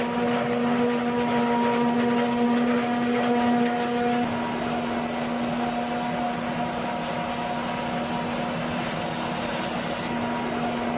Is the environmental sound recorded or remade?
recorded